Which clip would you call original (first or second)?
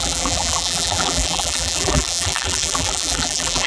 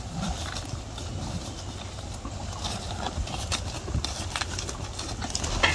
second